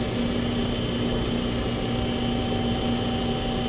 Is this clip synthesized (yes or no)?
no